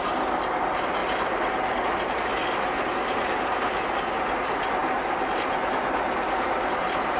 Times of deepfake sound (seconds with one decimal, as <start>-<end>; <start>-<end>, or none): none